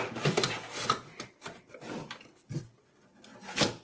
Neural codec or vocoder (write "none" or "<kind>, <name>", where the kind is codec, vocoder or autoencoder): none